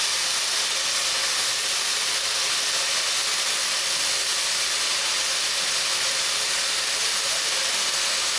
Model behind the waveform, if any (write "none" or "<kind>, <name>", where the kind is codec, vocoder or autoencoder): none